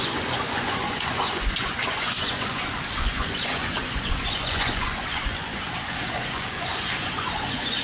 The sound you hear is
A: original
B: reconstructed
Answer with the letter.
B